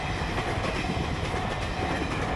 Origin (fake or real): real